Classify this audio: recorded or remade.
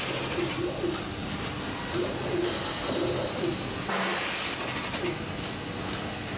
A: recorded